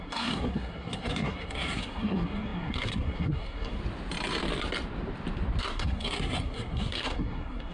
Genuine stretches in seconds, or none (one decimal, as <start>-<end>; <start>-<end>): 3.8-5.6

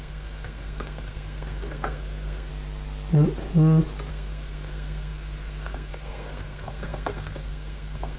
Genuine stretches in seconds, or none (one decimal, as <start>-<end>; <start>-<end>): 2.5-4.1